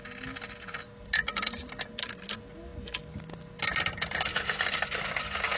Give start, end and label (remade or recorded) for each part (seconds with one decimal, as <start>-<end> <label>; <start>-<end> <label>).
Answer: 0.0-5.6 recorded